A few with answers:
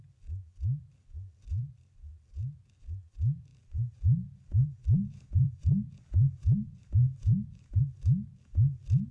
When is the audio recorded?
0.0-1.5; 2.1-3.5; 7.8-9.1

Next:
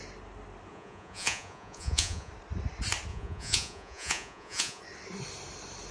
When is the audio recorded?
0.0-0.7; 2.3-3.1; 4.8-5.9

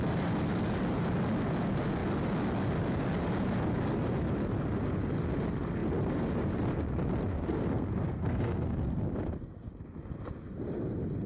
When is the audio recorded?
0.0-7.3; 9.0-11.3

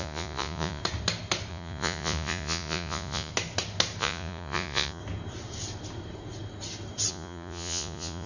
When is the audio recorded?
0.8-1.5; 3.3-4.0; 5.0-7.1

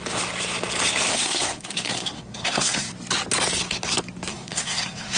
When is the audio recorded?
0.0-1.1; 2.9-4.3

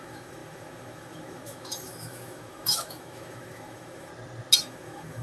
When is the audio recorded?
4.1-4.6

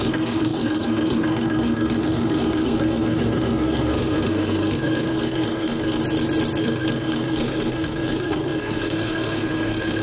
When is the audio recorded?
6.0-6.6

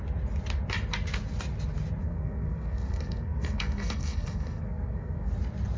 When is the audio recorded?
0.0-2.0; 5.3-5.8